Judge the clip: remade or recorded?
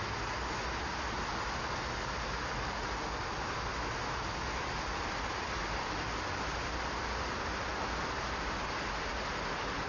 recorded